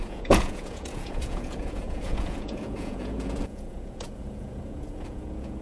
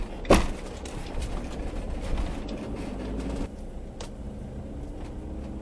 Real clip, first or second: second